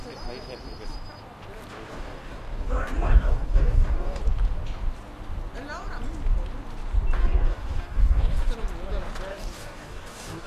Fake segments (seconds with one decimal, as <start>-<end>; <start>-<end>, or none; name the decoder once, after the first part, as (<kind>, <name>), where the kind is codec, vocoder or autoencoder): 1.9-4.2 (codec, DAC); 7.2-8.5; 9.3-10.5